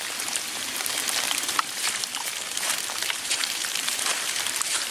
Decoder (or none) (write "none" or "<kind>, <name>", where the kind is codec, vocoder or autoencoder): vocoder, BigVGAN v2